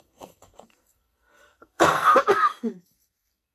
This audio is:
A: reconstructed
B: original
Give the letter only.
A